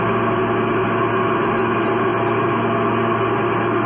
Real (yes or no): yes